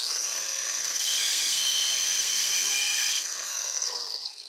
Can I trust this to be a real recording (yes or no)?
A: no